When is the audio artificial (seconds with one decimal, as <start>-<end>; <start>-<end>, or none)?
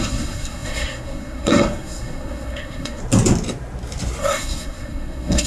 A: 0.0-3.0; 4.2-5.5